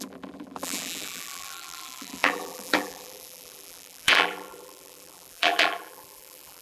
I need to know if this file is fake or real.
fake